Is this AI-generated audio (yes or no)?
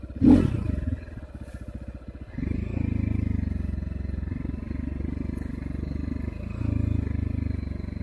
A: no